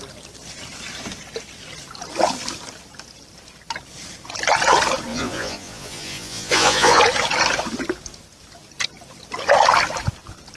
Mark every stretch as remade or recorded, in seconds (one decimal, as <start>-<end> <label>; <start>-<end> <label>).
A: 0.0-5.1 recorded; 5.1-7.0 remade; 7.0-10.6 recorded

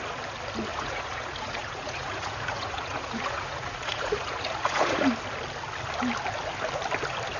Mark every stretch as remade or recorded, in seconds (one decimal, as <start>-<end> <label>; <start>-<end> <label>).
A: 0.0-0.7 recorded; 0.7-5.1 remade; 5.1-7.4 recorded

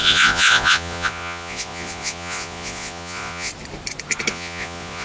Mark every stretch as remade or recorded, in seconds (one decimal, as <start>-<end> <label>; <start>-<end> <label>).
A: 0.0-3.5 remade; 3.5-4.3 recorded; 4.3-5.0 remade

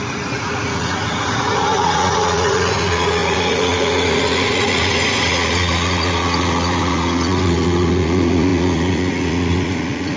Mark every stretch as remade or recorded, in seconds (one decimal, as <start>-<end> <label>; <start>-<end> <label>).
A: 0.0-10.2 remade

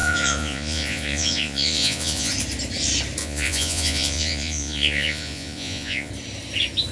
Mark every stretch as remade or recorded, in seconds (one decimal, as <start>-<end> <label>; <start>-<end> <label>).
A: 0.0-2.3 remade; 2.3-3.2 recorded; 3.2-6.1 remade; 6.1-6.9 recorded